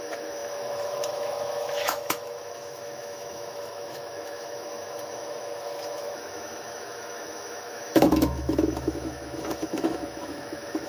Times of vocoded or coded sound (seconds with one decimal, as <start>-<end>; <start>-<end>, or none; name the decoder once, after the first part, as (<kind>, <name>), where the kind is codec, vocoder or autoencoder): 0.0-10.9 (autoencoder, DAC-VAE)